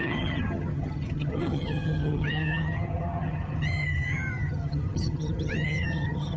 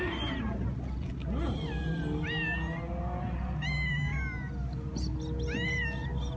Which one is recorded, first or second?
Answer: second